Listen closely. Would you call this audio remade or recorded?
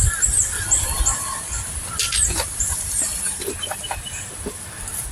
recorded